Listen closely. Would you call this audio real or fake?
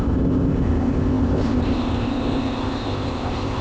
fake